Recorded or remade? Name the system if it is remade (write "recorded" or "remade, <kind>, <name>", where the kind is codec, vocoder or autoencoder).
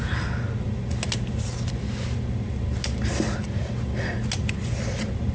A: recorded